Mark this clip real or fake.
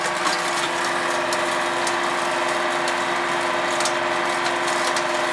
real